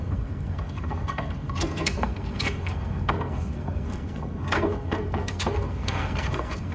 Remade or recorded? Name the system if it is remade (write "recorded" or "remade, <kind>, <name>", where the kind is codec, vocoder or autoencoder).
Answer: remade, codec, SNAC